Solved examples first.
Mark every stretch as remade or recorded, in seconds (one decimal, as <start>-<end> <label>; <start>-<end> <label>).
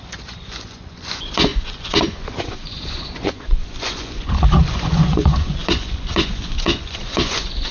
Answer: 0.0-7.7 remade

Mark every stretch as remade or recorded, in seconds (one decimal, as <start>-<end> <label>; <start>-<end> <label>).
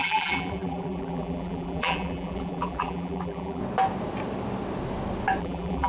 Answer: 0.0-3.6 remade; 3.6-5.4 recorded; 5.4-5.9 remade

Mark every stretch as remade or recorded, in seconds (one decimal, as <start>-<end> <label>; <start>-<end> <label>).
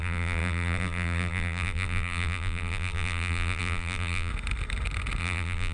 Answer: 0.0-4.3 remade; 4.3-5.2 recorded; 5.2-5.7 remade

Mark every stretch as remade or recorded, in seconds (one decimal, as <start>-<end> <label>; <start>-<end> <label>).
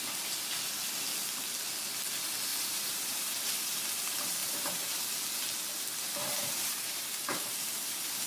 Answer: 0.0-2.5 recorded; 2.5-3.9 remade; 3.9-4.4 recorded; 4.4-5.0 remade; 5.0-6.2 recorded; 6.2-7.7 remade; 7.7-8.3 recorded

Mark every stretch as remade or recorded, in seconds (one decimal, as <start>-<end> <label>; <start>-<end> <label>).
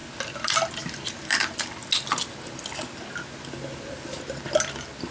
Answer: 0.0-5.1 recorded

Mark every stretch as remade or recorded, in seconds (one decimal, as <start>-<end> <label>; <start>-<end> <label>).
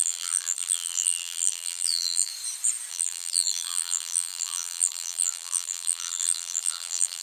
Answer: 0.0-2.3 remade; 2.3-2.9 recorded; 2.9-7.2 remade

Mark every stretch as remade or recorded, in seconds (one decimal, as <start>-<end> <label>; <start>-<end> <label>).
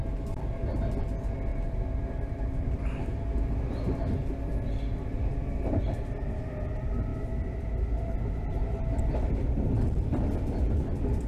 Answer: 0.0-1.5 recorded; 1.5-3.4 remade; 3.4-11.3 recorded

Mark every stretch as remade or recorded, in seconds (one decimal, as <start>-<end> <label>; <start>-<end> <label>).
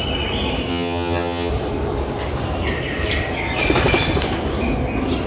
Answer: 0.0-0.7 recorded; 0.7-1.5 remade; 1.5-5.3 recorded